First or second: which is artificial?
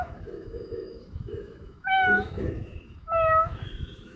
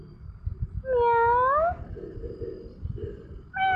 first